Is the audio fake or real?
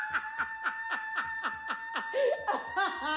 real